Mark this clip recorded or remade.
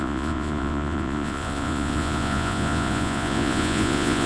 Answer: remade